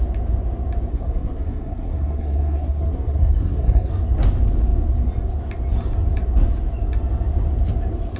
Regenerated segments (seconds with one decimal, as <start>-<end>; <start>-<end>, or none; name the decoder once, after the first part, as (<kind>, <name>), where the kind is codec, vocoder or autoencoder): 0.9-3.9 (codec, SNAC)